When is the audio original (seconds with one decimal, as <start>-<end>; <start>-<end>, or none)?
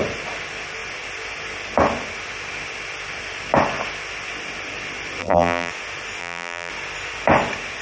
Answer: 0.0-5.2; 5.7-6.2; 6.7-7.8